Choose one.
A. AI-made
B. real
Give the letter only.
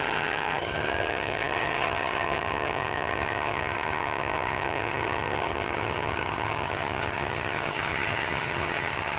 A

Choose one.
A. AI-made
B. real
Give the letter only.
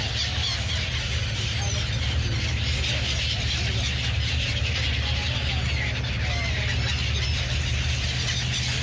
B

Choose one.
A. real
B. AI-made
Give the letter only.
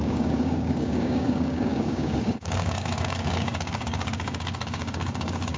B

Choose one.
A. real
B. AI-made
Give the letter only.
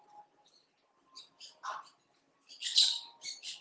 A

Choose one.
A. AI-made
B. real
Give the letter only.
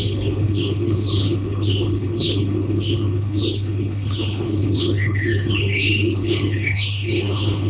A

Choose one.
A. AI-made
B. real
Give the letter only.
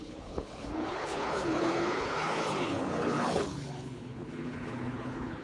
A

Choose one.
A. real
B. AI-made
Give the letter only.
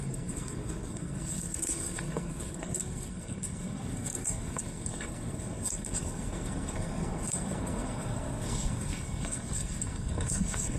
B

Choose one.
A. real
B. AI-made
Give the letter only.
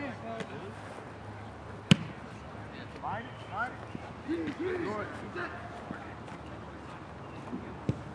A